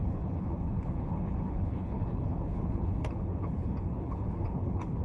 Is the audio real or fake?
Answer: fake